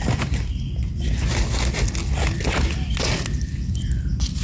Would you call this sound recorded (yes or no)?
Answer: yes